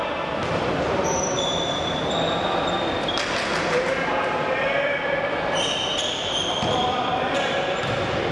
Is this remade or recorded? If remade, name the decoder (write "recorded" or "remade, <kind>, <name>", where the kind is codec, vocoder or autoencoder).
remade, vocoder, BigVGAN v2